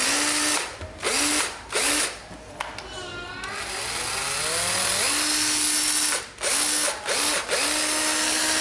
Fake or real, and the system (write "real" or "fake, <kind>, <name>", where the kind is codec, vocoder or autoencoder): real